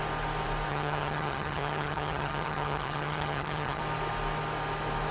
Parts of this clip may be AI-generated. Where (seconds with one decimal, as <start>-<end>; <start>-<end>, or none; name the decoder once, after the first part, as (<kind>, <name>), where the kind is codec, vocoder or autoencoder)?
0.7-3.8 (vocoder, HiFi-GAN)

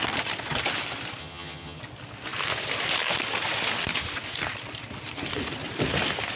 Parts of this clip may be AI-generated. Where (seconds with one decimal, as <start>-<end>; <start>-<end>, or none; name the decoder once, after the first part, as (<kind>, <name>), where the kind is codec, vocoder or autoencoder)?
1.2-1.8 (vocoder, HiFi-GAN)

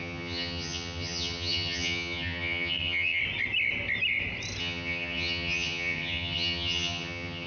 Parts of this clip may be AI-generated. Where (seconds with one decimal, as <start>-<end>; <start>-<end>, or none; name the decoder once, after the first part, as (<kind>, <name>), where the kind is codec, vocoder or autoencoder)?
0.0-3.2 (vocoder, HiFi-GAN); 4.6-7.5

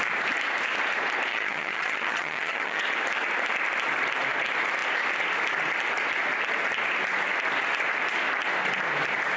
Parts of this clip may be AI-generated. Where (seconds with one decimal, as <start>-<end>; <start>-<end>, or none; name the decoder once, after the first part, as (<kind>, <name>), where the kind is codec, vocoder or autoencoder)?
1.3-2.8 (vocoder, HiFi-GAN)

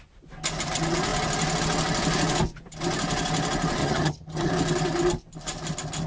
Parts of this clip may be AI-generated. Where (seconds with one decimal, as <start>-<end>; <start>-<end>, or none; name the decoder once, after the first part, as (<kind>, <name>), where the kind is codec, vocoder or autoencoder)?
3.8-4.5 (vocoder, HiFi-GAN)

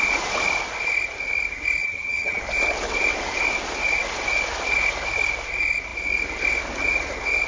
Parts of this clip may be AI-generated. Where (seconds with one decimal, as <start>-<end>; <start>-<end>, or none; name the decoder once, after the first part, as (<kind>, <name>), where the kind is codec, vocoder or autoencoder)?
1.8-2.4 (vocoder, HiFi-GAN)

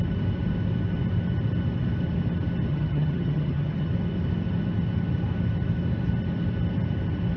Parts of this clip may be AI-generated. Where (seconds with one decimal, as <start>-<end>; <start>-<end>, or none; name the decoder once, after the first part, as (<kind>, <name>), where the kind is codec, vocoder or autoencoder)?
2.7-3.9 (vocoder, HiFi-GAN)

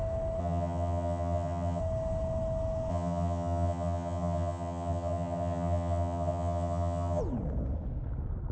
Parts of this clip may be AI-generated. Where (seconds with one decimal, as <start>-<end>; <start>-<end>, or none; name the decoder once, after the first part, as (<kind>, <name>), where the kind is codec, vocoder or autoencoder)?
0.4-1.8 (vocoder, HiFi-GAN); 2.9-7.2